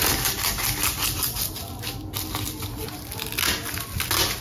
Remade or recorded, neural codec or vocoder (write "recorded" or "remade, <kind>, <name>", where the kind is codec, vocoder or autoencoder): recorded